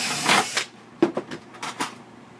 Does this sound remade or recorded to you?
remade